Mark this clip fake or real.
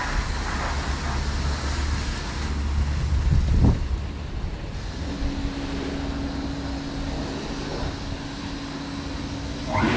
real